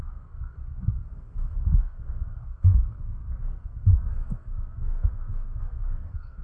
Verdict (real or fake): fake